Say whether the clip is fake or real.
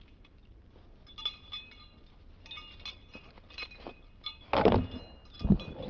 real